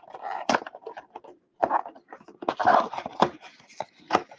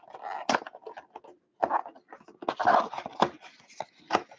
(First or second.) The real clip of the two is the second